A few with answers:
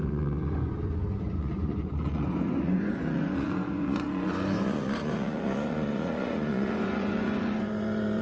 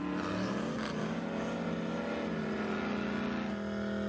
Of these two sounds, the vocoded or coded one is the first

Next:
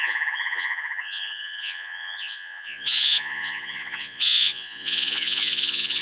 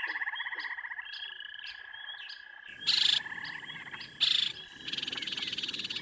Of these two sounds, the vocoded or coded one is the first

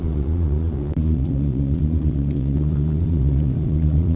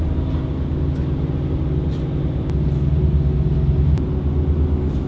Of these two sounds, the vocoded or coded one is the first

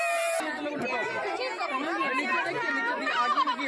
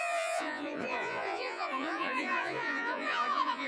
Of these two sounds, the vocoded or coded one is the second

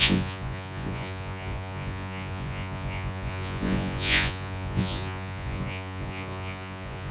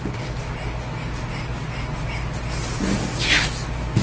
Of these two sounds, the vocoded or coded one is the first